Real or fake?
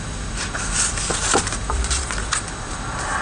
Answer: real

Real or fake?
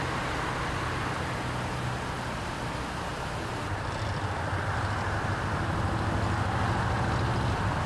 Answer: real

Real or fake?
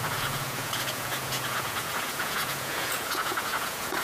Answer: fake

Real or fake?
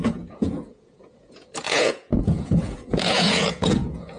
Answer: fake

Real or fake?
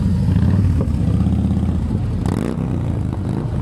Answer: real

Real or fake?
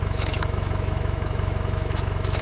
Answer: fake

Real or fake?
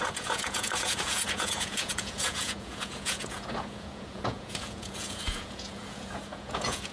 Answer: fake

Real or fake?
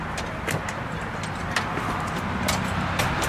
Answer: real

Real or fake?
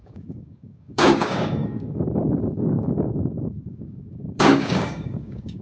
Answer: fake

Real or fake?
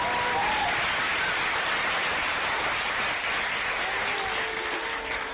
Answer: real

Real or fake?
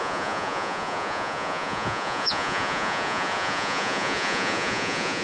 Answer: fake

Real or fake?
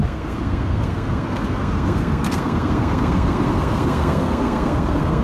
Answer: fake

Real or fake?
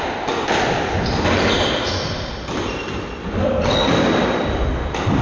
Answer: real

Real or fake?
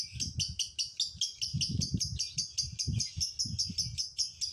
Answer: real